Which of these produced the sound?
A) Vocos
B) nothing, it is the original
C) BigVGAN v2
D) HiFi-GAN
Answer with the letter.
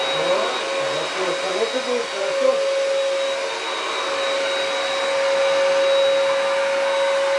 B